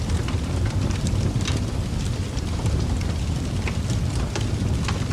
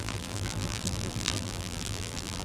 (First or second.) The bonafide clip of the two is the first